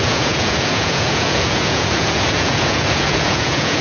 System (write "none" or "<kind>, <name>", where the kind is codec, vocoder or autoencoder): vocoder, Vocos